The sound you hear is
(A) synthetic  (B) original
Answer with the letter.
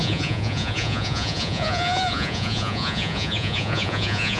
A